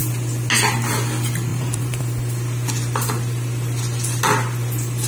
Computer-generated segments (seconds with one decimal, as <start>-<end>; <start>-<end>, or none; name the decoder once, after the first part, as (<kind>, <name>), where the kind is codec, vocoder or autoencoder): 1.5-2.0 (vocoder, BigVGAN v2)